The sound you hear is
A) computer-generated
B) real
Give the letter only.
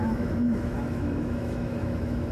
A